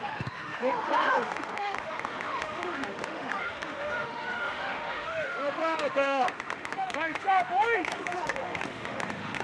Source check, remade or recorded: remade